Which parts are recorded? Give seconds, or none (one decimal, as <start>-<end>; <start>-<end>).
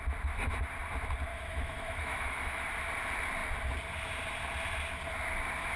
0.0-1.3; 2.7-5.8